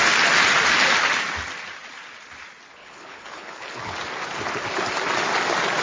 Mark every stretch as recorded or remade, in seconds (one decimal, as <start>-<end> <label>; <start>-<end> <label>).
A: 0.0-2.8 recorded; 2.8-3.9 remade; 3.9-5.8 recorded